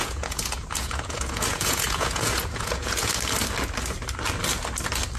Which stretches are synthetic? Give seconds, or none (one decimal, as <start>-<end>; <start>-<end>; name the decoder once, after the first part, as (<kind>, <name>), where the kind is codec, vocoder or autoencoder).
0.0-3.1 (vocoder, Vocos)